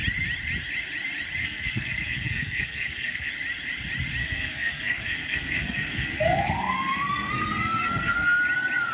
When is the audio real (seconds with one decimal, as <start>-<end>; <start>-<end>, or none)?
0.0-1.4; 3.3-4.2; 8.4-8.9